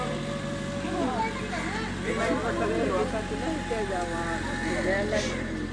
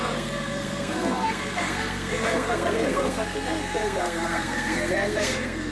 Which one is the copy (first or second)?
second